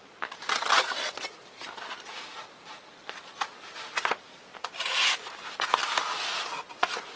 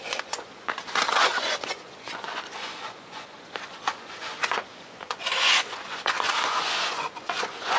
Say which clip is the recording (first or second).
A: first